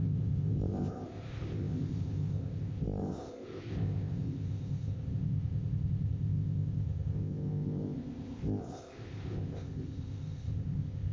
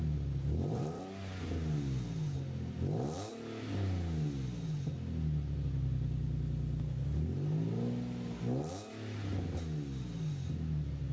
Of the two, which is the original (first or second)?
second